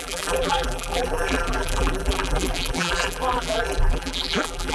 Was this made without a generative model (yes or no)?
no